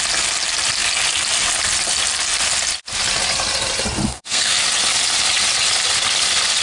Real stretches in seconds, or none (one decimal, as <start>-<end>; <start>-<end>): 0.0-4.1; 4.6-6.6